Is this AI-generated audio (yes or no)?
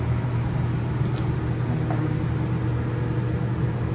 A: no